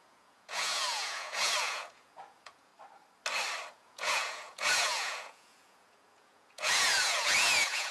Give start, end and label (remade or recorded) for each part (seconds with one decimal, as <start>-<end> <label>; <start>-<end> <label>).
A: 0.0-2.7 remade; 2.7-3.7 recorded; 3.7-7.9 remade